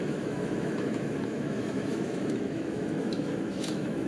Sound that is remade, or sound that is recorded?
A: remade